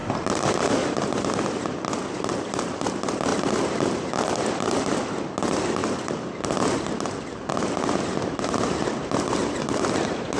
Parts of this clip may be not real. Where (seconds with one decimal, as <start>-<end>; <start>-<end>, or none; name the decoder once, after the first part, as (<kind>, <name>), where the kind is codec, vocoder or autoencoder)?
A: none